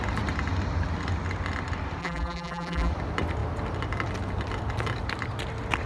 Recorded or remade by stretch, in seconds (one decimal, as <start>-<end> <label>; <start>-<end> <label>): 0.0-2.0 recorded; 2.0-2.9 remade; 2.9-5.9 recorded